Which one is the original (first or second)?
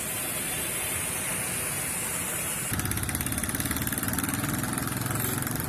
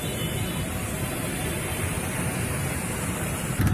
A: second